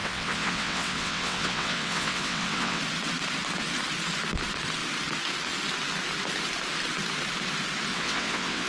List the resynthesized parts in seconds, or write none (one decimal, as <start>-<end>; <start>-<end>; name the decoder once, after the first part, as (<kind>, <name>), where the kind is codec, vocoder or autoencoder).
0.0-2.8 (vocoder, WaveNeXt); 7.9-8.7